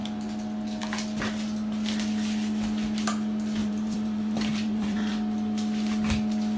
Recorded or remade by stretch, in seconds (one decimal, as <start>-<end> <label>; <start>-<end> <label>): 0.0-3.6 recorded; 3.6-5.1 remade; 5.1-6.6 recorded

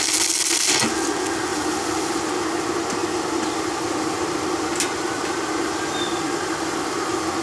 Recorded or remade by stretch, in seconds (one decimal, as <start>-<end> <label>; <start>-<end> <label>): 0.0-1.5 recorded; 1.5-2.1 remade; 2.1-3.0 recorded; 3.0-7.4 remade

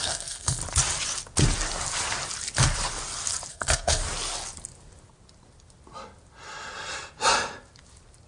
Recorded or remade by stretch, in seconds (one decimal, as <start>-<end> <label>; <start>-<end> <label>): 0.0-0.6 remade; 0.6-3.5 recorded; 3.5-4.0 remade; 4.0-8.3 recorded

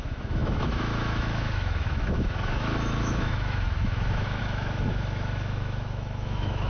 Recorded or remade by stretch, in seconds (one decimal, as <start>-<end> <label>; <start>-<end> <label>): 0.0-6.7 remade

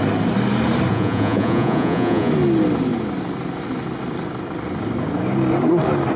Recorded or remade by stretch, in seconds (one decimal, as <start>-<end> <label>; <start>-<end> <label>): 0.0-0.9 recorded; 0.9-2.3 remade; 2.3-6.2 recorded

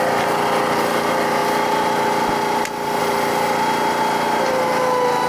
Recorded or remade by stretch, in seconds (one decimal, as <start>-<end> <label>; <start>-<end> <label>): 0.0-5.3 recorded

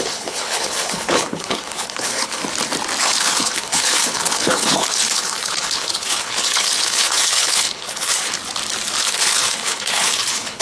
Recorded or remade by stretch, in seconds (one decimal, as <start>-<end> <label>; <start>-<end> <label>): 0.0-2.4 remade; 2.4-3.0 recorded; 3.0-8.3 remade; 8.3-9.0 recorded; 9.0-10.6 remade